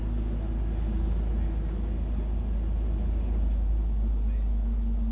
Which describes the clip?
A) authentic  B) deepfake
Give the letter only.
A